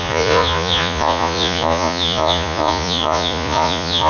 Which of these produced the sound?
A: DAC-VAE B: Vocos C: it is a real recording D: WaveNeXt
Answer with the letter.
B